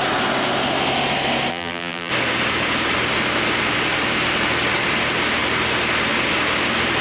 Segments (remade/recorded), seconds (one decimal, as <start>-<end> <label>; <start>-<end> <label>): 0.0-1.5 recorded; 1.5-2.1 remade; 2.1-7.0 recorded